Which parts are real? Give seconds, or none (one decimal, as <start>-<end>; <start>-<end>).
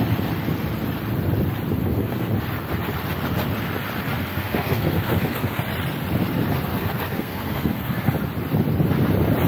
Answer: 0.0-1.8; 2.3-4.3; 5.6-6.7; 8.1-9.5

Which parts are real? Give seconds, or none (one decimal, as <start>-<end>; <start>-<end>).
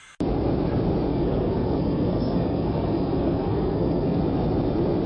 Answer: 0.0-1.1; 4.2-5.1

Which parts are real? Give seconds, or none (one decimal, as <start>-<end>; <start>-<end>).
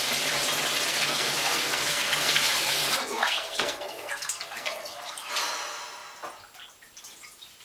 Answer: 0.0-0.9; 5.3-7.6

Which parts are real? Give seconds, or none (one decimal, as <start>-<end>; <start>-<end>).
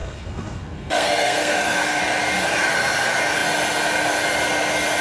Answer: 2.0-5.0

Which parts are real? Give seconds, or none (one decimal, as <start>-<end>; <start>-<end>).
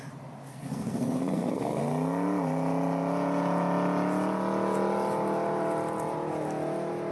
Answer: 0.0-0.5; 1.8-7.1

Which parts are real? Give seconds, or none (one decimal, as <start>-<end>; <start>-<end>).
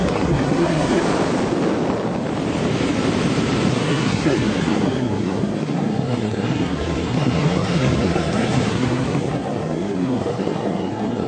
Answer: 1.0-3.7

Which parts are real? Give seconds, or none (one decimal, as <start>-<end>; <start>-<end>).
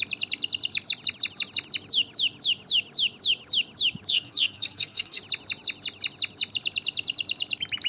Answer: 0.0-4.1; 5.2-7.9